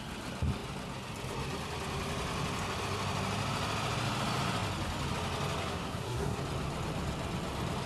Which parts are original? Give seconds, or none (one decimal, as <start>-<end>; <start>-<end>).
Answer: 0.0-5.6; 6.4-7.9